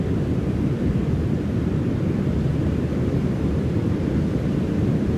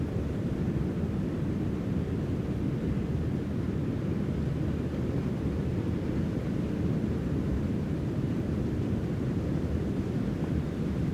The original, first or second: second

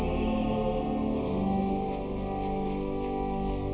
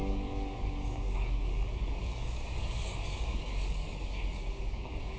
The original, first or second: first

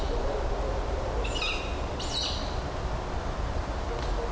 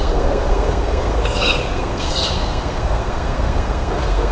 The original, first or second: first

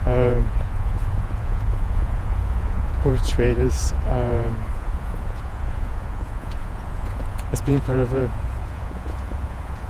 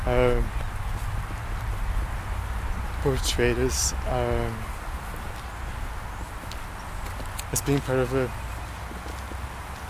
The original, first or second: second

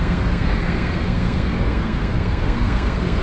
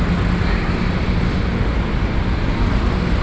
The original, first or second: second